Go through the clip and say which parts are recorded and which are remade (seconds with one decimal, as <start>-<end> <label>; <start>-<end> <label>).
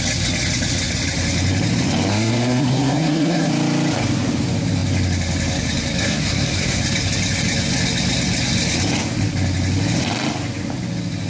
0.0-2.1 recorded; 2.1-3.5 remade; 3.5-6.0 recorded; 6.0-6.8 remade; 6.8-11.3 recorded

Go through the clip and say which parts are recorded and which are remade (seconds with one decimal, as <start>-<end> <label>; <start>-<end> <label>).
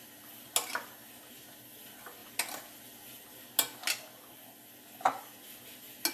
0.0-6.1 recorded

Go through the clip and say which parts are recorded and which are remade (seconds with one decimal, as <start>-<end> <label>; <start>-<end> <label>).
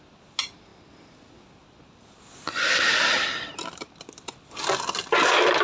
0.0-5.6 recorded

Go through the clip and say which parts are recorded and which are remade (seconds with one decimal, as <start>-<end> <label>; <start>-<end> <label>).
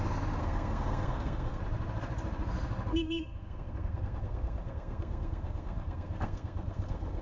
0.0-0.4 recorded; 0.4-1.6 remade; 1.6-2.9 recorded; 2.9-7.2 remade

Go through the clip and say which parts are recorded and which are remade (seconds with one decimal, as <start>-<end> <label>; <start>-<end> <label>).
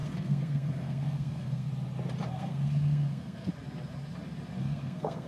0.0-1.7 remade; 1.7-2.3 recorded; 2.3-3.5 remade; 3.5-4.6 recorded; 4.6-5.3 remade